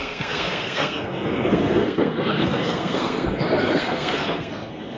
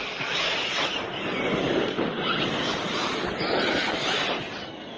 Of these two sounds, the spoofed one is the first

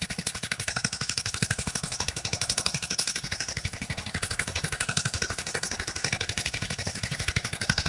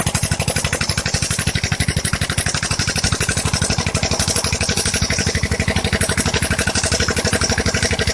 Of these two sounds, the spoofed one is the first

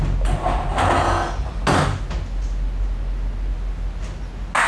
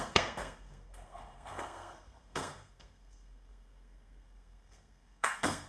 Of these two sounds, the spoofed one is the second